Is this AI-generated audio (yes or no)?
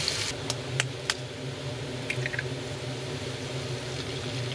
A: no